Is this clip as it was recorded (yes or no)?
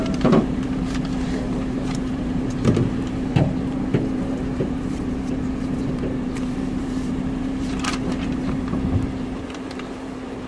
no